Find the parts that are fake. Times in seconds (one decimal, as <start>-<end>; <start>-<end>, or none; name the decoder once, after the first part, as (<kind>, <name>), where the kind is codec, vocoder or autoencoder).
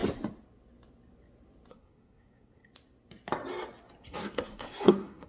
1.7-2.7 (codec, SNAC); 4.0-5.3